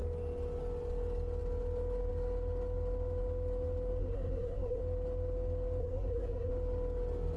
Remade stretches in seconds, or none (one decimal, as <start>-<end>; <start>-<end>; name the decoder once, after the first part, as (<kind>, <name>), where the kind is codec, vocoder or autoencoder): 4.0-4.8 (codec, SNAC); 5.8-6.5